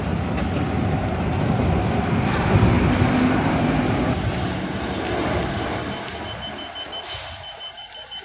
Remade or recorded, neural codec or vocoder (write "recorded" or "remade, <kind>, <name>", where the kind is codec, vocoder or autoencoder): recorded